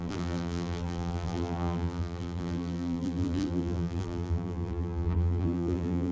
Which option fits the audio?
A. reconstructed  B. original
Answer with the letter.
A